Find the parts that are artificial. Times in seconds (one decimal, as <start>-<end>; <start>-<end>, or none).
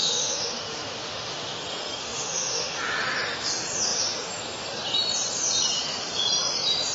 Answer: 0.0-1.6; 2.0-2.8